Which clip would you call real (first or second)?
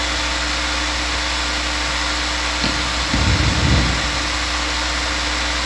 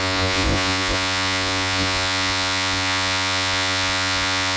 first